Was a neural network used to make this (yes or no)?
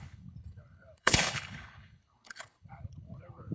yes